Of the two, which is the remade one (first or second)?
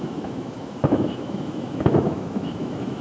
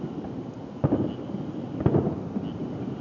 first